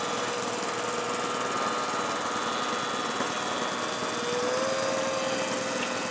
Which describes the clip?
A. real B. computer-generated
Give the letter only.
A